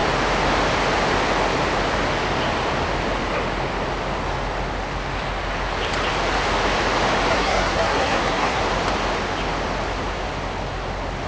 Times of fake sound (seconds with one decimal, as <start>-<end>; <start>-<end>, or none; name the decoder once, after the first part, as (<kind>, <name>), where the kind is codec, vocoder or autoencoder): 7.3-8.6 (codec, SNAC)